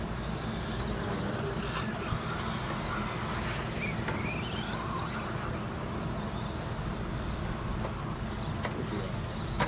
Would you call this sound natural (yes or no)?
yes